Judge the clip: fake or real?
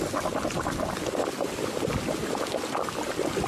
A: real